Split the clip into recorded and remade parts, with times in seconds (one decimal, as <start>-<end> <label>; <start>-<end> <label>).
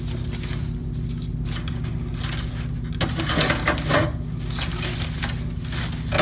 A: 0.0-6.2 recorded